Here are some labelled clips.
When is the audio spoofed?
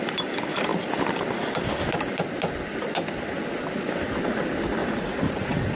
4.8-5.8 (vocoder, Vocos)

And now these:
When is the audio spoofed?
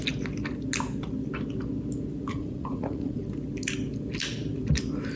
2.3-3.2 (vocoder, Vocos)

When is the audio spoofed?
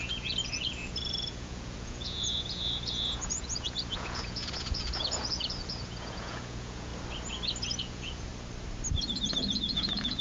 0.0-6.9 (vocoder, Vocos); 7.8-8.3; 9.5-10.2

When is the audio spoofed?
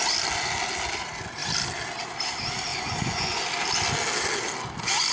2.7-3.4 (vocoder, Vocos)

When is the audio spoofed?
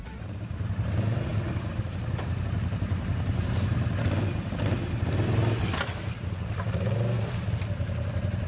none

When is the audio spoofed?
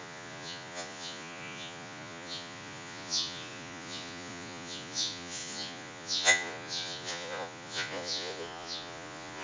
0.0-9.4 (vocoder, Vocos)